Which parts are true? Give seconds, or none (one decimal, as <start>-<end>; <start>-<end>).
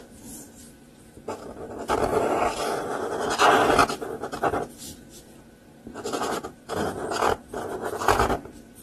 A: 0.0-8.8